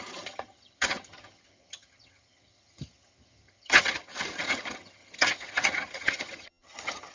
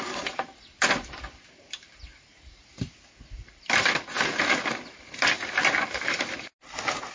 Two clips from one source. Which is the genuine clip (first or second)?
second